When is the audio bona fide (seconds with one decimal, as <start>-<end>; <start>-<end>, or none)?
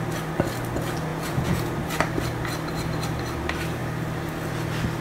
0.0-1.1; 1.7-5.0